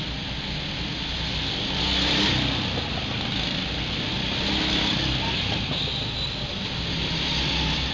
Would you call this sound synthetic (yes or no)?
no